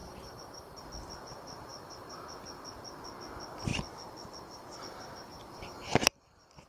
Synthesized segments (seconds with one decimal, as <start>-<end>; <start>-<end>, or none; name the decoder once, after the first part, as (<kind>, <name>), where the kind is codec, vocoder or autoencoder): 0.0-0.8 (vocoder, BigVGAN v2)